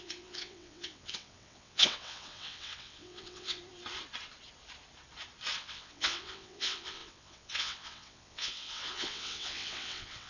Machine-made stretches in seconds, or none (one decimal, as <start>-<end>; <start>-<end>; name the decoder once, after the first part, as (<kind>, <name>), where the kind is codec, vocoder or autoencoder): 0.0-3.6 (vocoder, WaveNeXt); 5.6-10.3